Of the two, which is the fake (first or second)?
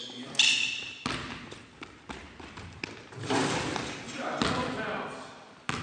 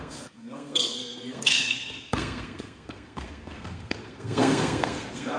second